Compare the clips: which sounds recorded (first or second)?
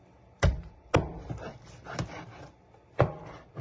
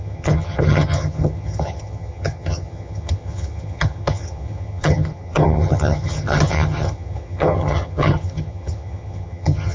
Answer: first